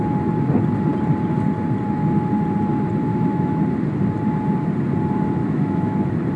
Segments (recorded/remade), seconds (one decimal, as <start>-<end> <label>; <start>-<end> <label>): 0.0-3.1 recorded; 3.1-3.6 remade; 3.6-5.4 recorded; 5.4-6.0 remade; 6.0-6.4 recorded